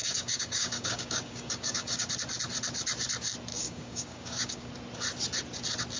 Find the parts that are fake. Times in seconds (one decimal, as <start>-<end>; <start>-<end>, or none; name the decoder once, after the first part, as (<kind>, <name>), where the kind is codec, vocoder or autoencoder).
0.0-2.1 (codec, DAC); 3.5-4.7